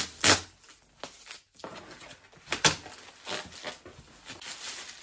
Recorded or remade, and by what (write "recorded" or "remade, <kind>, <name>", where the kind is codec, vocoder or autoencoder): recorded